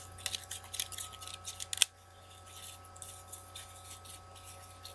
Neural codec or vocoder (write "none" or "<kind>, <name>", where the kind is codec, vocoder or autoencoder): none